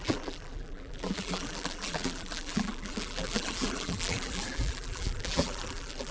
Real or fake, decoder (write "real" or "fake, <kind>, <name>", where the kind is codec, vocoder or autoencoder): fake, vocoder, BigVGAN v2